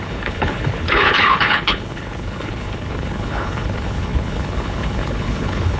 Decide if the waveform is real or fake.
fake